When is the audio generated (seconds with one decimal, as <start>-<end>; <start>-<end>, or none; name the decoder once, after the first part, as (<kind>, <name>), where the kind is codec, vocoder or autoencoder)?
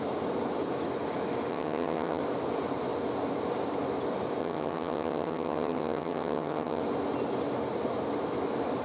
1.5-2.2 (vocoder, HiFi-GAN); 4.4-6.8